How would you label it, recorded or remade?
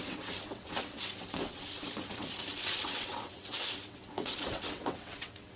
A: remade